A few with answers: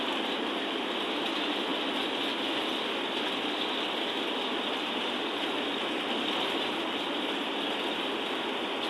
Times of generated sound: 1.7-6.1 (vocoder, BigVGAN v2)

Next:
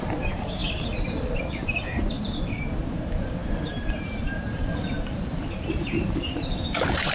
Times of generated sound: 0.0-0.6 (vocoder, BigVGAN v2); 1.4-7.1

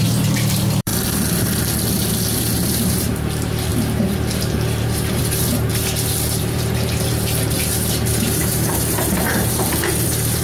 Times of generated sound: 0.0-0.9 (vocoder, BigVGAN v2); 2.4-5.7; 6.4-10.4

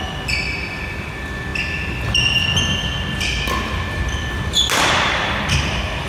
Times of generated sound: none

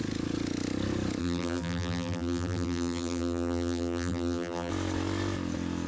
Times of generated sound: 1.2-4.7 (vocoder, BigVGAN v2)

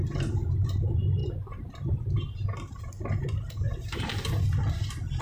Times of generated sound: 1.2-2.8 (vocoder, BigVGAN v2); 3.7-4.3

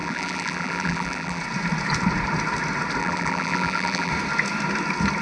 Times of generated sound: 0.0-1.4 (vocoder, BigVGAN v2); 3.0-4.1